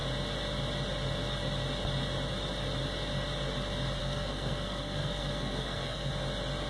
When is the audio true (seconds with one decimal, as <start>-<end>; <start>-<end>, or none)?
0.0-4.0; 6.1-6.7

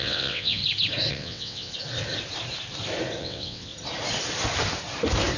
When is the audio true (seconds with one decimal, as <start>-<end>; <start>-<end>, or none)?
0.6-1.1; 1.7-3.2; 3.7-5.4

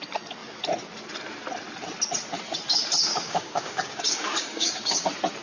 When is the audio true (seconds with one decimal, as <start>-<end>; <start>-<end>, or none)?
0.0-3.1; 5.0-5.4

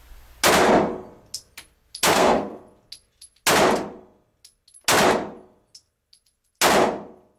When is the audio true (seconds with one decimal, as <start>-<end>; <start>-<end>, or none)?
0.0-2.1; 2.6-7.4